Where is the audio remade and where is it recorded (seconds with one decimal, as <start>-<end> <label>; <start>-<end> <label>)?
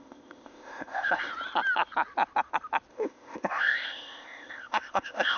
0.0-1.3 remade; 1.3-2.9 recorded; 2.9-5.4 remade